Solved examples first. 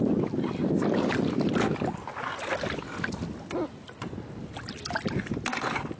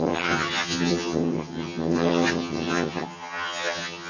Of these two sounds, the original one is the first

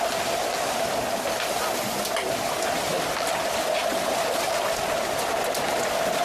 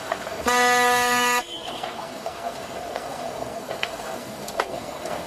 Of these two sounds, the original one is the first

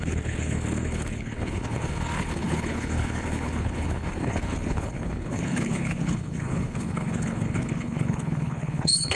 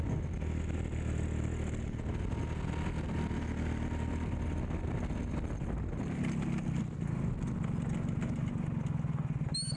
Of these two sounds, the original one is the second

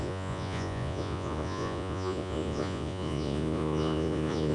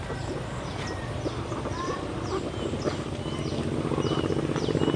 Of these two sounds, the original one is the second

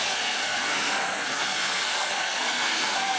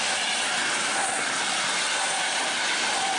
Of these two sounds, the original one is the second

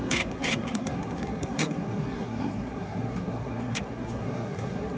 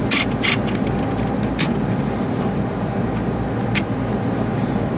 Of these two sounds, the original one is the second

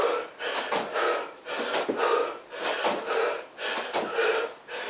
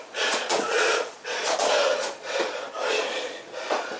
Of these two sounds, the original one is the first